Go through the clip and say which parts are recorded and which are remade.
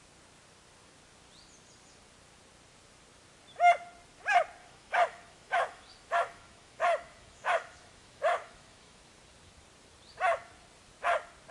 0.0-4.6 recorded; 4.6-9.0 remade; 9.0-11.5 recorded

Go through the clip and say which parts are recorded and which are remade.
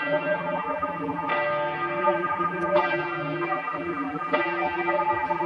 0.0-1.3 remade; 1.3-2.0 recorded; 2.0-5.5 remade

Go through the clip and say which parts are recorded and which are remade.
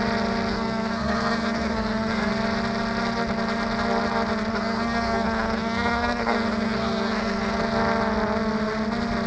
0.0-0.5 recorded; 0.5-2.3 remade; 2.3-4.5 recorded; 4.5-7.6 remade; 7.6-9.3 recorded